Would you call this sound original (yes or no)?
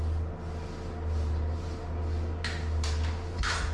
yes